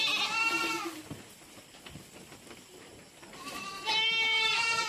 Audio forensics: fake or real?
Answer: real